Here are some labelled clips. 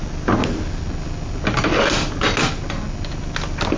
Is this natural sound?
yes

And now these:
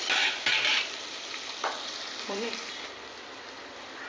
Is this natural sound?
no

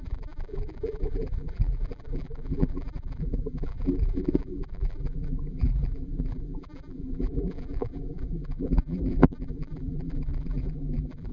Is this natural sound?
no